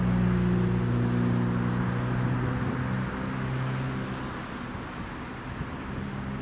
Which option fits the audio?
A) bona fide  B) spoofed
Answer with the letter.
A